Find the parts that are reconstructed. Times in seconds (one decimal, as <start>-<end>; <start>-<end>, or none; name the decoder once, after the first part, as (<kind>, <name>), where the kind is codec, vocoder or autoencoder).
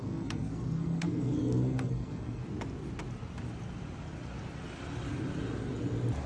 0.0-2.4 (codec, SNAC)